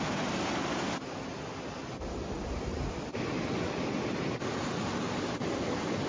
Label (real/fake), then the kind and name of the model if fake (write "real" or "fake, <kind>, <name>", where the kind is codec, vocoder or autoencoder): real